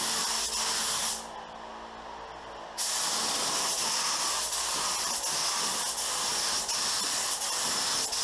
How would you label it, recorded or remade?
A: recorded